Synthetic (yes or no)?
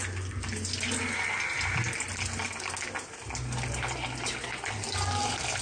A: no